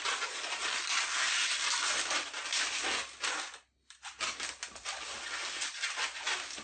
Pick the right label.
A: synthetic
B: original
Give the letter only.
B